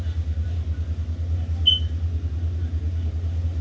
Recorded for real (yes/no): yes